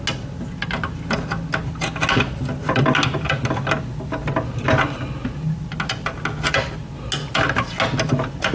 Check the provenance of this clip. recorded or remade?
recorded